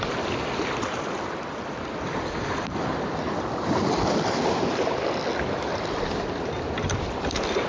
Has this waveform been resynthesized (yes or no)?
no